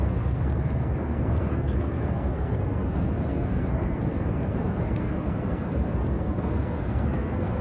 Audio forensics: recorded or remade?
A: remade